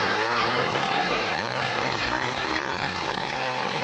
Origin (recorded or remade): remade